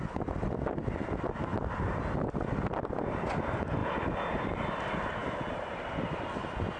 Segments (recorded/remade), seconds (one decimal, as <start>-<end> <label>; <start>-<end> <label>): 0.0-6.8 recorded